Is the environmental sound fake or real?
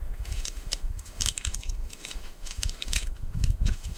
fake